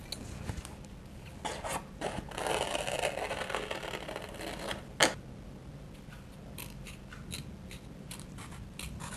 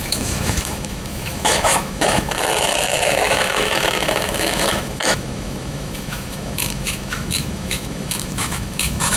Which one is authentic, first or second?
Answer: first